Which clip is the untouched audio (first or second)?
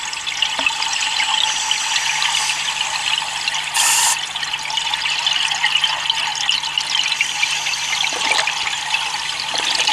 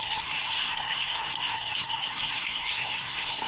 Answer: first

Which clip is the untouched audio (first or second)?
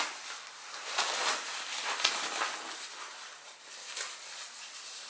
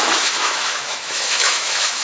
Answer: first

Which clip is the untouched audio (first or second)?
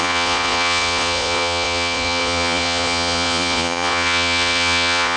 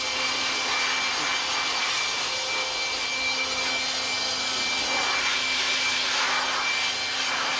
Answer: second